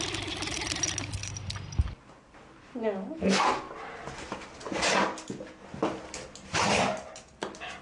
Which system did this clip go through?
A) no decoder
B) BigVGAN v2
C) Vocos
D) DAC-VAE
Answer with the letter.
A